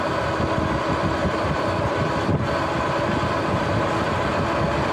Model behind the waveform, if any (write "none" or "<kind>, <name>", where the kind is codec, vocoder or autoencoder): none